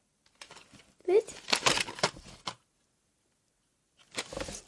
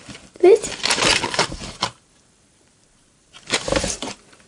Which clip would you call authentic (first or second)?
first